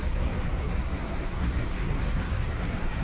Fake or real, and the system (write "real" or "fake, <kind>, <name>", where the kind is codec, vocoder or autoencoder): fake, codec, SNAC